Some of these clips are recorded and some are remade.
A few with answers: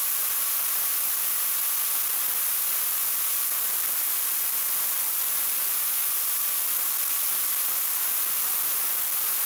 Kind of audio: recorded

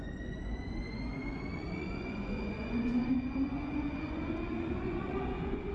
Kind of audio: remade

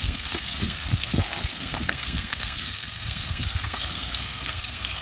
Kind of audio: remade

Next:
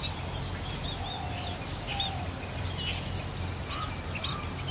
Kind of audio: recorded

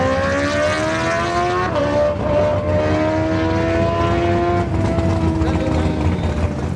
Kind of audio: recorded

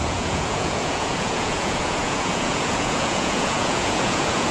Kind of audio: remade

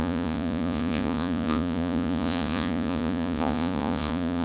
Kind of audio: remade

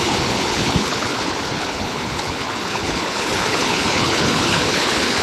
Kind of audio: remade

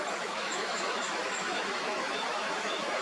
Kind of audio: remade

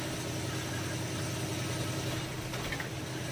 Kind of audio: recorded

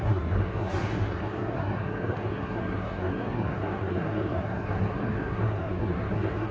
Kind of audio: remade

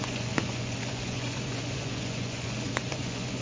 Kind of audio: remade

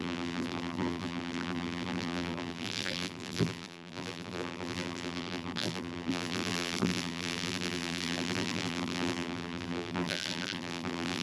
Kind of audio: remade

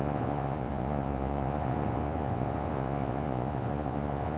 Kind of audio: remade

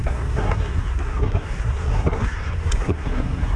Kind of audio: remade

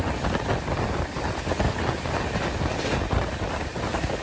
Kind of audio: recorded